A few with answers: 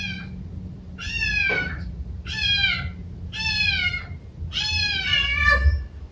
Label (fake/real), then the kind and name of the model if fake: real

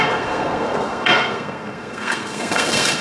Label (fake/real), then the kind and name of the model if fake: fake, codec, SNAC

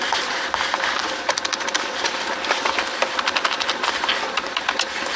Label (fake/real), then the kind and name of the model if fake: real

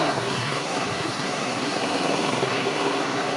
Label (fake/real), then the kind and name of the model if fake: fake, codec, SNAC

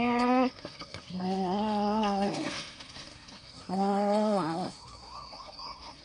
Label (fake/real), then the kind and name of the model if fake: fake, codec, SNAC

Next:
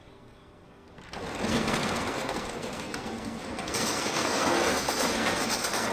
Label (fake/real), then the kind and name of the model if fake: fake, codec, SNAC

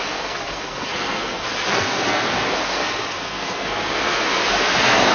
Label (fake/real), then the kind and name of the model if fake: fake, codec, SNAC